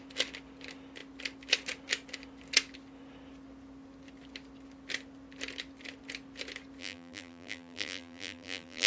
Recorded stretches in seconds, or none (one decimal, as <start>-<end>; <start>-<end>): 0.0-6.8